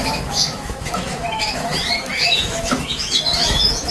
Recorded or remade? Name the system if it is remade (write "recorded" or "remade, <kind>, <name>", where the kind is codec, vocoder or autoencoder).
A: remade, autoencoder, DAC-VAE